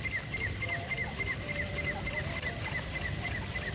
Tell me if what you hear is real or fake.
fake